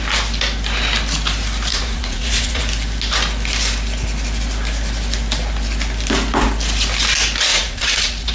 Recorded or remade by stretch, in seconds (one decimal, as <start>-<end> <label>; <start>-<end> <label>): 0.0-1.7 recorded; 1.7-2.6 remade; 2.6-7.5 recorded; 7.5-8.3 remade